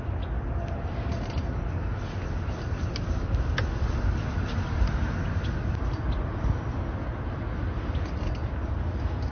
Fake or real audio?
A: real